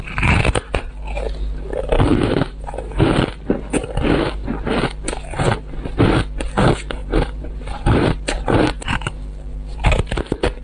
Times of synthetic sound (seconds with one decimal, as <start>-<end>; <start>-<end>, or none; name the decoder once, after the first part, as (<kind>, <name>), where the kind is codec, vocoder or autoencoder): 2.1-3.1 (vocoder, BigVGAN v2); 7.0-10.2